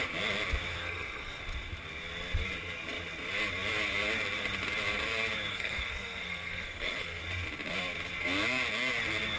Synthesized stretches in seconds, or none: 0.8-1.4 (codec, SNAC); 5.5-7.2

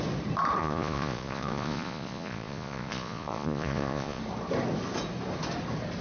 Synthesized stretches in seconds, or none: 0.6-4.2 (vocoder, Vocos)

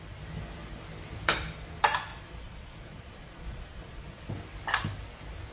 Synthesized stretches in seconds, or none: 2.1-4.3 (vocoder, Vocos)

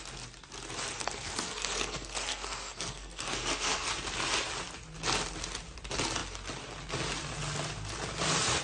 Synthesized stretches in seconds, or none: 0.9-3.9 (codec, SNAC)